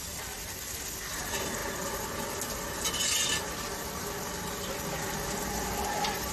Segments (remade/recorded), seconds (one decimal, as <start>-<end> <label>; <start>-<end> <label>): 0.0-6.3 recorded